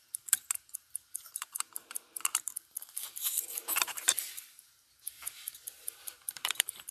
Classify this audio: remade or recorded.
remade